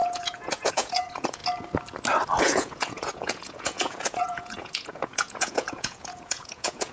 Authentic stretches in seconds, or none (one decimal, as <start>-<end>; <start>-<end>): 1.4-2.4